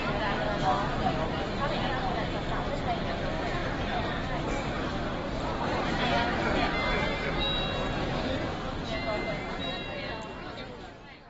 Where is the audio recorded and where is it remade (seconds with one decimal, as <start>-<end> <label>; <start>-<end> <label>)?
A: 0.0-11.3 recorded